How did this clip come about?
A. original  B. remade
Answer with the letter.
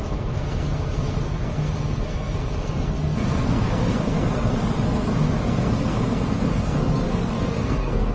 B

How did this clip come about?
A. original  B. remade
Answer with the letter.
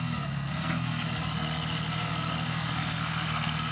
B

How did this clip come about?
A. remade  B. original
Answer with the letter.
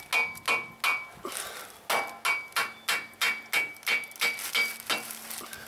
B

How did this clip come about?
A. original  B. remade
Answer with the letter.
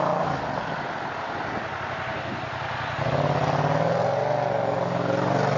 A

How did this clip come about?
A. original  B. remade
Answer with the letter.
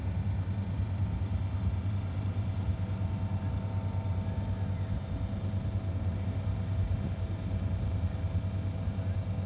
A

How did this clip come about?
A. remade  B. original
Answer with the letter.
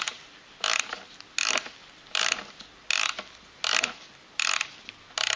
B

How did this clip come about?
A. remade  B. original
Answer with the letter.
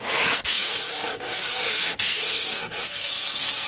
A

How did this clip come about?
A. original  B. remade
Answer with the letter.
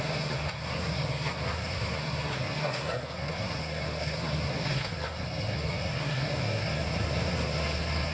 B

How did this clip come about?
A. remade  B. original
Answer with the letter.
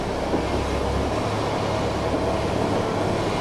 B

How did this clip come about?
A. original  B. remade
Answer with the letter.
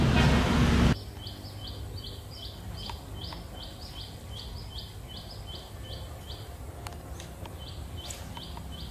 A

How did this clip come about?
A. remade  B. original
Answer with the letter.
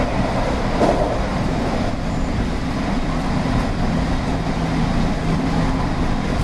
B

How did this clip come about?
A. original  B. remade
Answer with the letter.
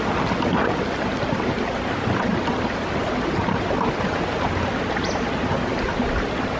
A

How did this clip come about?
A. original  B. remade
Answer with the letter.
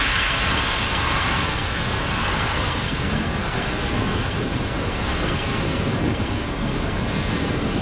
B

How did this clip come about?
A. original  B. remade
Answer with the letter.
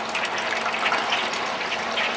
A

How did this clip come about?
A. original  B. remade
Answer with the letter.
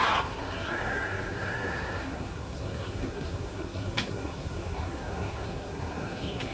B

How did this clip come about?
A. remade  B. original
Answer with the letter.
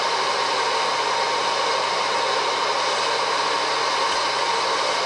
B